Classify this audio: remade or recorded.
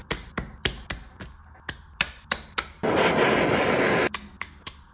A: recorded